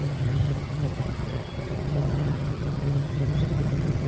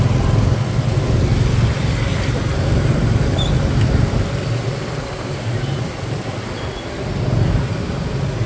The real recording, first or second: second